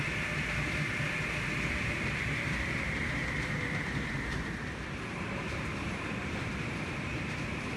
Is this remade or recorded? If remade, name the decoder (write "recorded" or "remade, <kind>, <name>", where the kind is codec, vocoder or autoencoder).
remade, vocoder, BigVGAN v2